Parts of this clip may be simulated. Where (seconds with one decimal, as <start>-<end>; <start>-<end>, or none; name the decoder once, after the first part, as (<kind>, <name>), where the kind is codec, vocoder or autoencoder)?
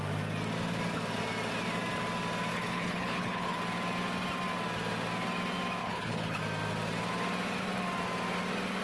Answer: 2.5-3.6 (codec, HILCodec); 5.8-6.4